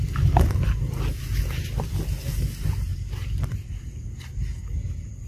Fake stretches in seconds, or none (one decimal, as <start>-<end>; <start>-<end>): 2.9-3.9